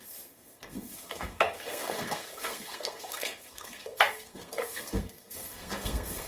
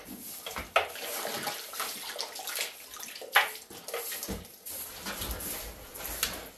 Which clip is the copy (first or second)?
first